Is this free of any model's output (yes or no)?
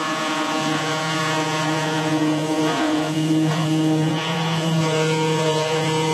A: no